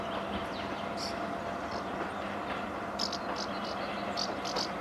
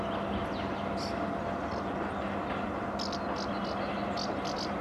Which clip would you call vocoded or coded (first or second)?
first